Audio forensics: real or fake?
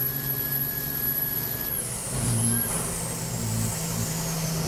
real